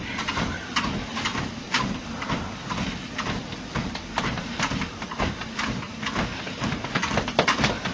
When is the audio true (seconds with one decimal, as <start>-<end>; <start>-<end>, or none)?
0.0-1.3; 1.8-3.7; 7.1-7.9